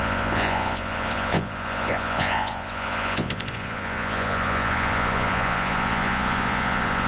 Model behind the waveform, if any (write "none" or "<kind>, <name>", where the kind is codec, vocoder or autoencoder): vocoder, Vocos